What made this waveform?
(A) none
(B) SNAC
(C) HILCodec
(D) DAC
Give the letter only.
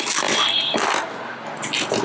A